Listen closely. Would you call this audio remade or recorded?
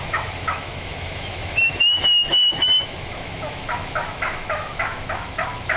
remade